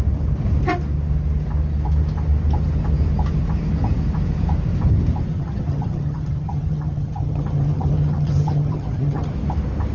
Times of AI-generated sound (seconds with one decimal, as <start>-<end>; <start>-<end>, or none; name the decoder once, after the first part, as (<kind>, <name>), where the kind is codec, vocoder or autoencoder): 5.3-9.3 (vocoder, HiFi-GAN)